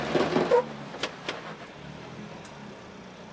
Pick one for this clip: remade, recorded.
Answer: recorded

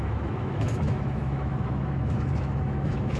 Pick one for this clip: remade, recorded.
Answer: remade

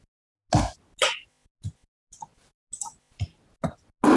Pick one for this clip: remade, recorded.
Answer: recorded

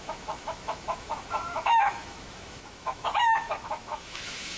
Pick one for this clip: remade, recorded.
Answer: remade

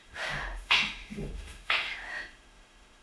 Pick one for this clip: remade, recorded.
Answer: remade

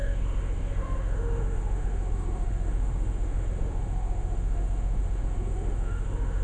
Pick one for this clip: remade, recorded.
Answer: remade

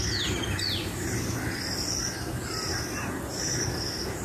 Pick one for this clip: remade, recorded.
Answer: recorded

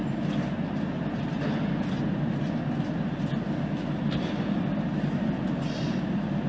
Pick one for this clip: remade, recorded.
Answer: recorded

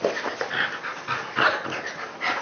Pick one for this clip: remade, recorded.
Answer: recorded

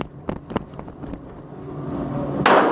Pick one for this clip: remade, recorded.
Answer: recorded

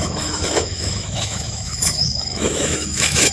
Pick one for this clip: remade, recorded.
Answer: remade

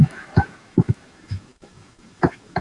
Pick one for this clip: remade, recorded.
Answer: remade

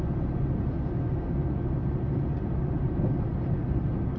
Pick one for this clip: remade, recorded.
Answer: recorded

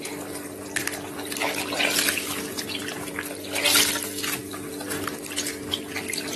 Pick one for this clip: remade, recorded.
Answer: recorded